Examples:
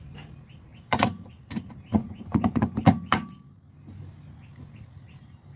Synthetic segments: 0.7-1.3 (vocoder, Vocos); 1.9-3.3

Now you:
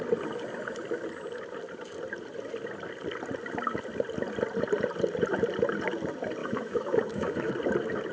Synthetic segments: 6.4-7.5 (autoencoder, DAC-VAE)